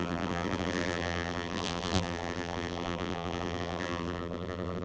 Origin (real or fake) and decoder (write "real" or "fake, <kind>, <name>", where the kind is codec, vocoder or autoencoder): fake, vocoder, BigVGAN v2